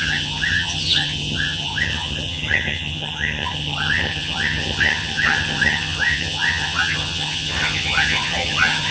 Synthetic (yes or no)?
yes